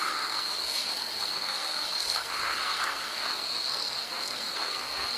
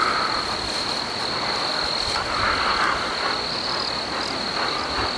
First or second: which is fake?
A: first